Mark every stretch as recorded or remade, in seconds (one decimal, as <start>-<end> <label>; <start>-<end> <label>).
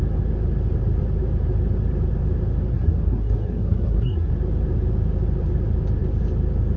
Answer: 0.0-2.7 recorded; 2.7-4.3 remade; 4.3-6.8 recorded